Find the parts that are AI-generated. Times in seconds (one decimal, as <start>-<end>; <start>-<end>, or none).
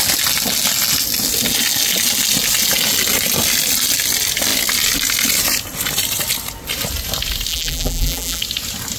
7.5-8.4